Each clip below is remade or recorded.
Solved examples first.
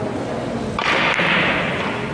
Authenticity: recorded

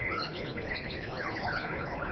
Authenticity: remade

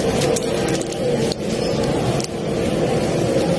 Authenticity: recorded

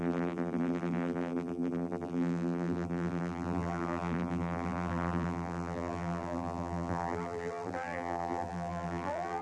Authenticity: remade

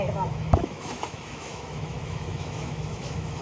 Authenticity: remade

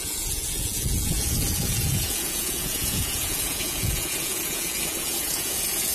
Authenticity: remade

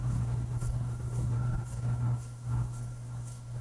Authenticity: remade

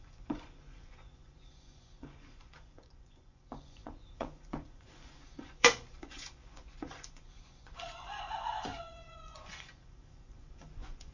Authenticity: remade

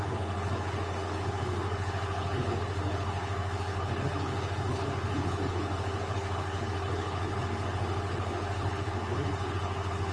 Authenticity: remade